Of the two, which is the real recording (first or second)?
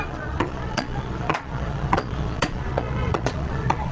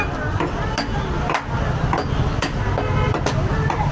second